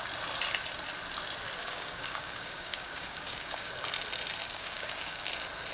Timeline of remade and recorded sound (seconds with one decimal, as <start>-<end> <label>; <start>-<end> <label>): 0.0-1.6 recorded; 1.6-3.7 remade; 3.7-4.4 recorded; 4.4-5.3 remade; 5.3-5.7 recorded